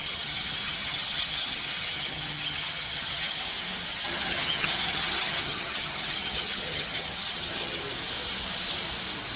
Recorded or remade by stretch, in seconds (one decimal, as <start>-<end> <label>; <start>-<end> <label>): 0.0-3.4 remade; 3.4-3.9 recorded; 3.9-7.8 remade; 7.8-9.4 recorded